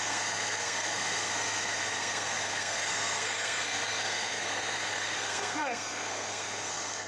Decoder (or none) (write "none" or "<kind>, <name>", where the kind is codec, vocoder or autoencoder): codec, SNAC